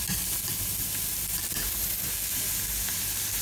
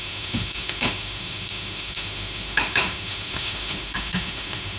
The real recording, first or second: first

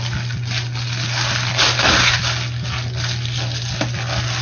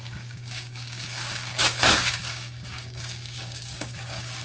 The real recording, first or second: first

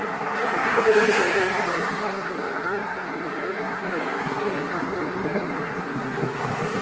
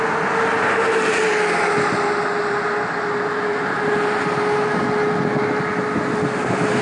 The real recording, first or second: second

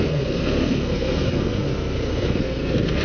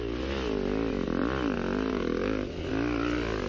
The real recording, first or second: second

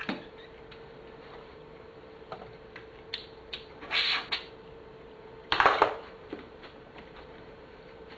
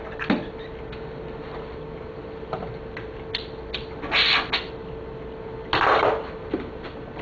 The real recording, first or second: second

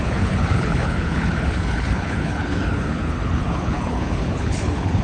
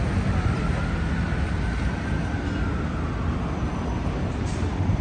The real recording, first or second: second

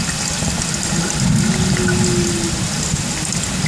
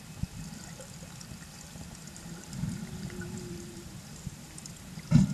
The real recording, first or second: first